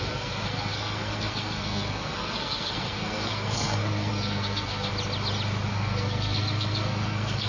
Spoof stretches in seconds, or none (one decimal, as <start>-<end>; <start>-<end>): 0.0-4.9; 5.7-7.5